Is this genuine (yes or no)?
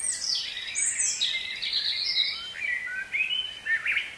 yes